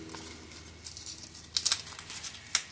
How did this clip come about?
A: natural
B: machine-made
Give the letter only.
A